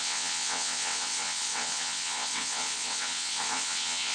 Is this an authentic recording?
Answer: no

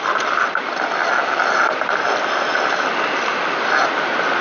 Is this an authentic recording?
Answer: yes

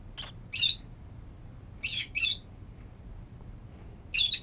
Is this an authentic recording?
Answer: yes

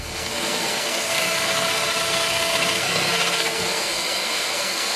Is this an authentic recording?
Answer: no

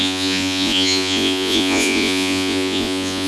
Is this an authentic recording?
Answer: no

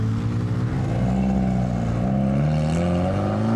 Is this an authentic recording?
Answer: yes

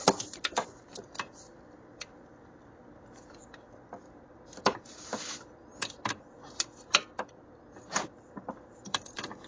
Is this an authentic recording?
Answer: no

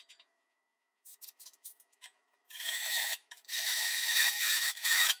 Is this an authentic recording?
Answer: no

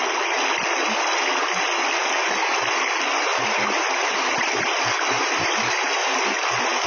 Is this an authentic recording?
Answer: yes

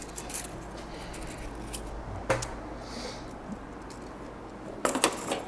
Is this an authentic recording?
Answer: yes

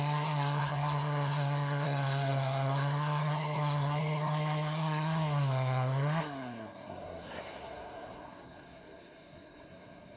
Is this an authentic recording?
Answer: no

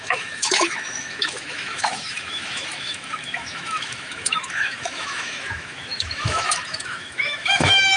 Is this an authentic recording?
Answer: no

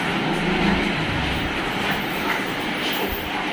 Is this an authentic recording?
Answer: yes